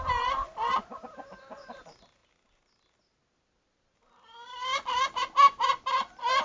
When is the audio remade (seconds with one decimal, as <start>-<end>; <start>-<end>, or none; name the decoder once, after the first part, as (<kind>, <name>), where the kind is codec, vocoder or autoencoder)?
none